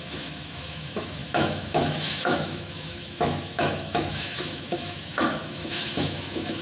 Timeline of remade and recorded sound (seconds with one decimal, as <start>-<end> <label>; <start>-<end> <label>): 0.0-6.6 remade

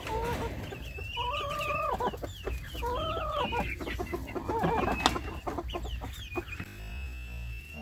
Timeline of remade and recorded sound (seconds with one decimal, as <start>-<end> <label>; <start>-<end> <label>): 0.0-6.9 recorded; 6.9-7.8 remade

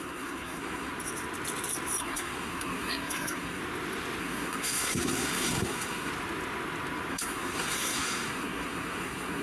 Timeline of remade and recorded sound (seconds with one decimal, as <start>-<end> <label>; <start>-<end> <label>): 0.0-0.9 remade; 0.9-2.0 recorded; 2.0-3.6 remade; 3.6-4.2 recorded; 4.2-6.1 remade; 6.1-7.1 recorded; 7.1-9.4 remade

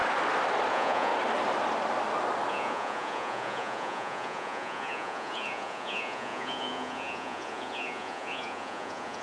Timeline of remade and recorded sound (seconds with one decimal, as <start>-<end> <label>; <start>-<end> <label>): 0.0-0.7 recorded; 0.7-1.1 remade; 1.1-2.5 recorded; 2.5-9.2 remade

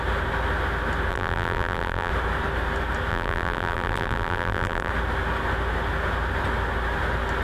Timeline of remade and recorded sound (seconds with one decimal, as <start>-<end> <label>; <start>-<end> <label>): 0.0-1.1 recorded; 1.1-2.1 remade; 2.1-3.1 recorded; 3.1-4.9 remade; 4.9-7.4 recorded

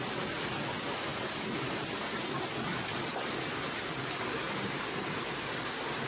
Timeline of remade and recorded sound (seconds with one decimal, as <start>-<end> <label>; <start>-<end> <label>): 0.0-6.1 recorded

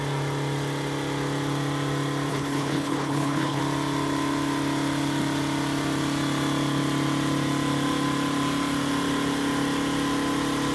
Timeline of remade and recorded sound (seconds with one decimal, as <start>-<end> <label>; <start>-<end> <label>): 0.0-2.3 recorded; 2.3-3.6 remade; 3.6-10.7 recorded